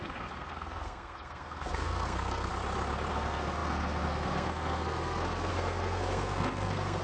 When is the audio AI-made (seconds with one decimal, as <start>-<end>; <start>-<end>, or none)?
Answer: 0.0-2.5; 3.1-7.0